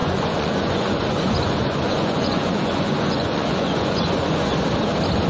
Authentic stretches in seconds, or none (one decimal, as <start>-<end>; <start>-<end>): 4.5-5.3